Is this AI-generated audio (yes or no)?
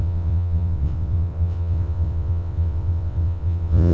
yes